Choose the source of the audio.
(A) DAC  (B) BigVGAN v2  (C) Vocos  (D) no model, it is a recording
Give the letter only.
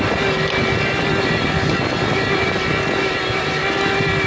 D